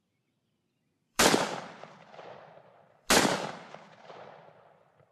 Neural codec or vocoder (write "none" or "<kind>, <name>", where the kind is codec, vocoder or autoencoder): vocoder, BigVGAN v2